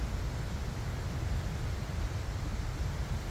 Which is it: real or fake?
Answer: real